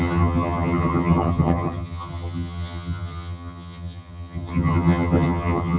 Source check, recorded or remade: remade